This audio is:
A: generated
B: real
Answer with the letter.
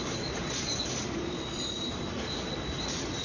B